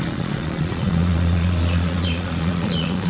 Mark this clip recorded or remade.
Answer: remade